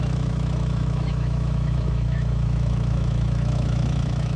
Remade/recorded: remade